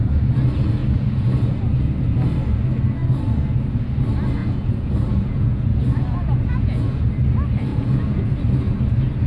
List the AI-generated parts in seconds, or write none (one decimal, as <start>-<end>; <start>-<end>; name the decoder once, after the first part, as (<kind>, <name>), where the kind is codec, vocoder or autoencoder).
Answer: 0.8-1.5 (vocoder, Vocos); 4.4-7.0; 7.7-8.2